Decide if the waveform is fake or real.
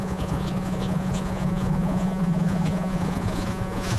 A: fake